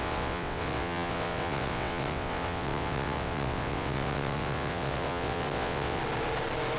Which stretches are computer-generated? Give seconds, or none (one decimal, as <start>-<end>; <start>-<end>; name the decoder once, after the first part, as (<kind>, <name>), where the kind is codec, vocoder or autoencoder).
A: 0.0-6.0 (vocoder, WaveNeXt)